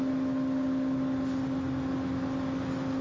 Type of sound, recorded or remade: recorded